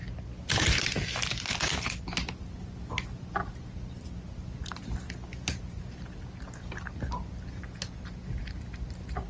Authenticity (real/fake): real